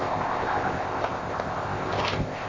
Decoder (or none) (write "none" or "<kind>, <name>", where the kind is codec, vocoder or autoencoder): codec, ZipCodec